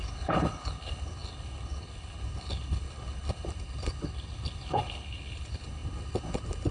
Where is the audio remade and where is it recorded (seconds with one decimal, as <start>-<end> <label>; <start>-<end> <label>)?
0.0-6.7 remade